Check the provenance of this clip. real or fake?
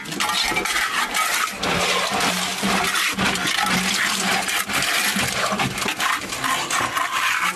real